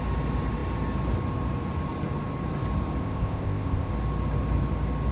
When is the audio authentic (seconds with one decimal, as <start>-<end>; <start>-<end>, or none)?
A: 0.0-3.0; 3.9-5.1